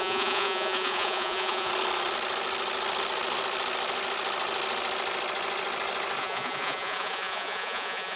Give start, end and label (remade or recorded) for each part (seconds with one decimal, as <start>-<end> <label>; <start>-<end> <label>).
0.0-1.7 remade; 1.7-6.2 recorded; 6.2-8.2 remade